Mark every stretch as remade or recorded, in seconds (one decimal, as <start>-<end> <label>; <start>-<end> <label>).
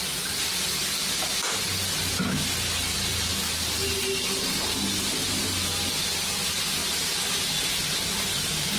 0.0-6.8 recorded; 6.8-8.8 remade